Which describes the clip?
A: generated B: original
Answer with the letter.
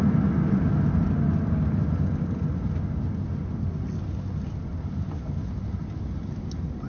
B